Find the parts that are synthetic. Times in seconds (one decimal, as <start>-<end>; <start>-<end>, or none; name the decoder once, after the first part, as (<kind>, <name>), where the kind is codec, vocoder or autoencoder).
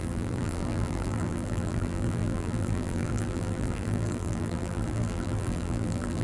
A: 0.0-6.2 (vocoder, BigVGAN v2)